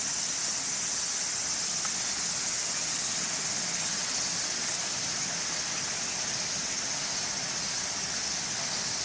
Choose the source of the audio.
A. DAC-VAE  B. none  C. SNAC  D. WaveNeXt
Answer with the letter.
B